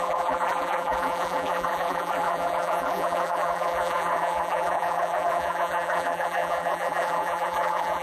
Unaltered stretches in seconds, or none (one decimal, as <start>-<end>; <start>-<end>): none